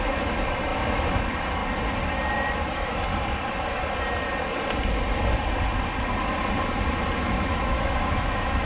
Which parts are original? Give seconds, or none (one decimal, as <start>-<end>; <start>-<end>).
1.6-2.7; 3.1-7.2